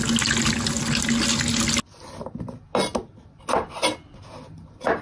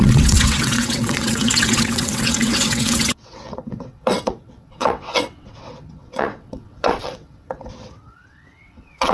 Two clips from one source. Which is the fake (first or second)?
second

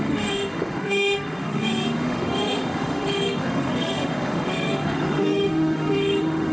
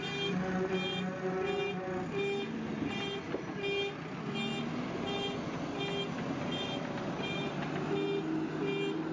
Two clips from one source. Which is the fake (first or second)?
first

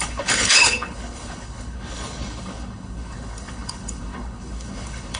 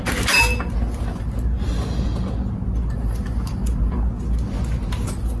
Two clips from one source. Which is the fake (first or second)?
first